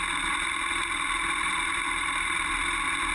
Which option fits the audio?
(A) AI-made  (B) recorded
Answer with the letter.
B